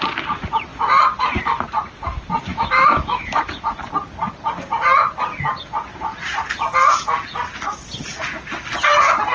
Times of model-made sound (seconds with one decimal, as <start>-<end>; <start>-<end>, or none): 2.5-3.5